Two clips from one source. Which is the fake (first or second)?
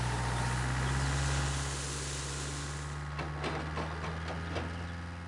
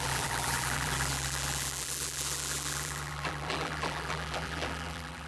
second